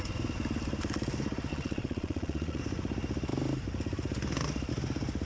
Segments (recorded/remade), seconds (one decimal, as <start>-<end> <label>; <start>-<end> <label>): 0.0-1.5 recorded; 1.5-2.6 remade; 2.6-5.3 recorded